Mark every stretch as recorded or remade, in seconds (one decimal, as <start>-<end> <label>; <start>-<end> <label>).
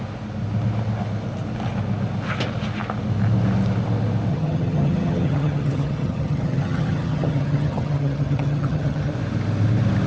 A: 0.0-4.3 recorded; 4.3-9.1 remade; 9.1-10.1 recorded